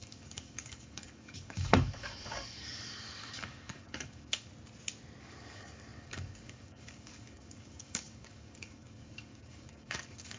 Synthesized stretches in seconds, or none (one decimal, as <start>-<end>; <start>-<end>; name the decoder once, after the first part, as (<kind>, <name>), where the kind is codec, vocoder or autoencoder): 0.0-4.5 (codec, DAC); 5.2-10.4